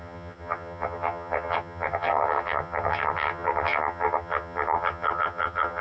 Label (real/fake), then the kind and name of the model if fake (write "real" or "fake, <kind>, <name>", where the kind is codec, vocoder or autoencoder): fake, vocoder, HiFi-GAN